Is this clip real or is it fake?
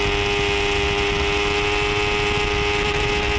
real